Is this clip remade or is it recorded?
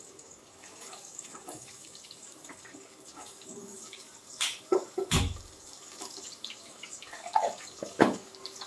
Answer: remade